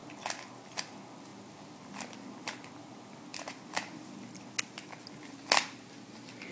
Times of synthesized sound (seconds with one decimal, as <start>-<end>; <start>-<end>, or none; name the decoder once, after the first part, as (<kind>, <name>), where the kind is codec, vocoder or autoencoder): 3.3-3.9 (vocoder, BigVGAN v2)